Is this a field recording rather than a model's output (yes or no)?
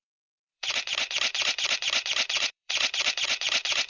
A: no